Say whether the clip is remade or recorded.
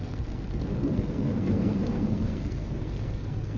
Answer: remade